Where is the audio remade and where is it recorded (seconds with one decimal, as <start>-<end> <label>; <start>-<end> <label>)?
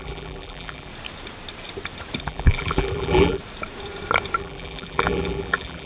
0.0-0.9 remade; 0.9-2.2 recorded; 2.2-3.4 remade; 3.4-4.4 recorded; 4.4-5.9 remade